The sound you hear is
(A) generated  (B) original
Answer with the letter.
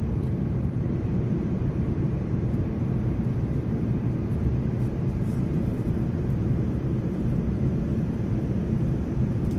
A